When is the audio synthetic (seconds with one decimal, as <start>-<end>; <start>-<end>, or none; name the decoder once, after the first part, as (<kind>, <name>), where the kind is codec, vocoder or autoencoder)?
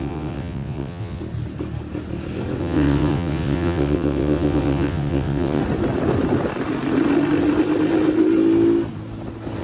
0.0-1.2 (vocoder, WaveNeXt); 2.6-5.6